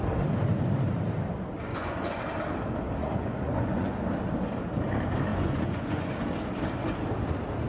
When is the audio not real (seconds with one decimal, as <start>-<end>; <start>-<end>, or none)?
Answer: 1.7-2.2; 3.0-4.0; 5.3-6.1